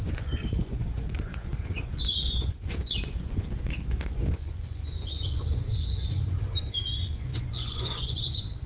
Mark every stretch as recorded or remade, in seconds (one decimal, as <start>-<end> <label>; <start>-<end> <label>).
0.0-8.7 remade